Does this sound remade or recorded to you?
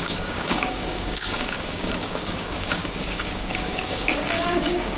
remade